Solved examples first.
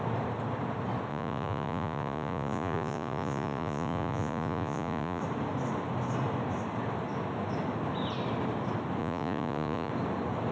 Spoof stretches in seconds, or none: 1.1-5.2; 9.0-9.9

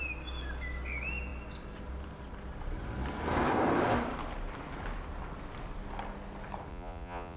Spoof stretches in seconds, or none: 6.7-7.4

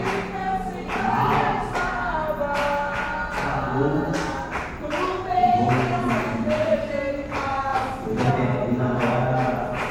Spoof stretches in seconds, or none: none

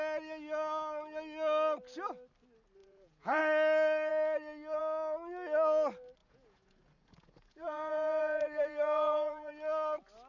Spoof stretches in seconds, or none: 2.8-3.4; 6.2-9.5

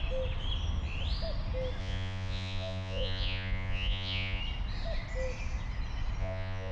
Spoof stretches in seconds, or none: 1.8-4.4; 6.2-6.7

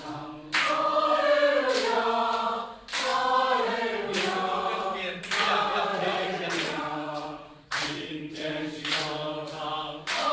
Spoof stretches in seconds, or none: 5.9-8.5

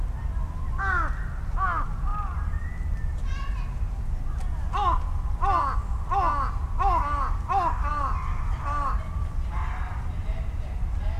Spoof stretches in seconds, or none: none

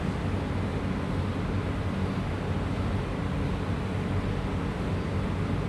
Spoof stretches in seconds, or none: none